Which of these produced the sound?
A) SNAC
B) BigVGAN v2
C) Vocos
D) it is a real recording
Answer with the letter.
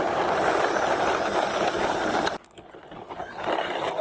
D